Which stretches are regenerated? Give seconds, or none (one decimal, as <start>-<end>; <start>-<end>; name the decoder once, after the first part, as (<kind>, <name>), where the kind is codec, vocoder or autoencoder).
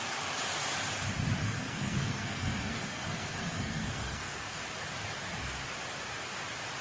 1.4-4.6 (codec, SNAC)